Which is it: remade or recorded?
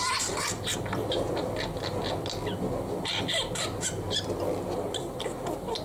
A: recorded